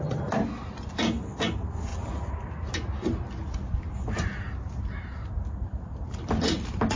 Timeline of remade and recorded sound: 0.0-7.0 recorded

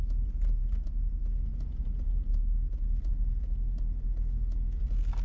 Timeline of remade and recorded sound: 0.0-5.2 recorded

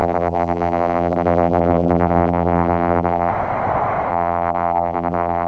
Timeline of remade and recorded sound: 0.0-3.3 remade; 3.3-4.1 recorded; 4.1-5.5 remade